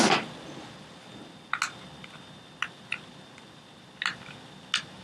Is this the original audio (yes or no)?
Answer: yes